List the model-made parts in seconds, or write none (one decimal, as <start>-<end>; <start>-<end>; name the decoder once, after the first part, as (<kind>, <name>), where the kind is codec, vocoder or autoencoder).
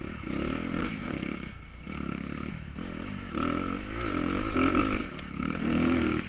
0.8-2.5 (codec, SNAC); 5.0-6.3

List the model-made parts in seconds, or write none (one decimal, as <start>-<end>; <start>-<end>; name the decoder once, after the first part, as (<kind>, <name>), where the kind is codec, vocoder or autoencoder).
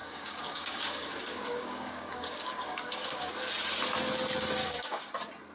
0.0-3.3 (codec, DAC); 4.6-5.1